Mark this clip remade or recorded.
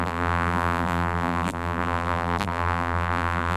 remade